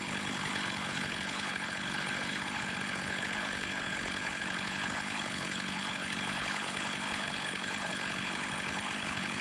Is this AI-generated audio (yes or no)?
yes